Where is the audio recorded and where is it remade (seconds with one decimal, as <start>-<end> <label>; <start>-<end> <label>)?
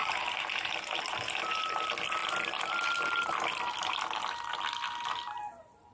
0.0-1.6 remade; 1.6-5.9 recorded